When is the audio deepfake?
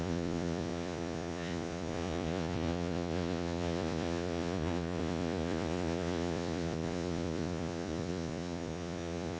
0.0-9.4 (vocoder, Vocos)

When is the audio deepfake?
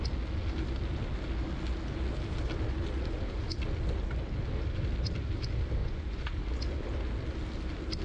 5.8-6.4 (vocoder, Vocos)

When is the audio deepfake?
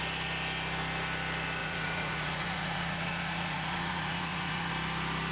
1.6-4.7 (vocoder, Vocos)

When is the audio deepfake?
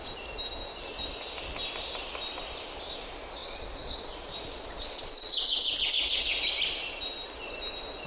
3.4-4.1 (vocoder, Vocos); 4.5-5.7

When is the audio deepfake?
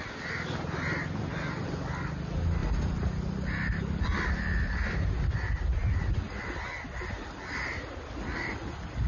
none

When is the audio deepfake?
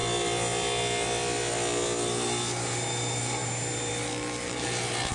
none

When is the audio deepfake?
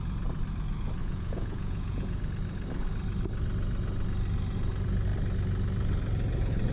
1.0-2.2 (vocoder, Vocos)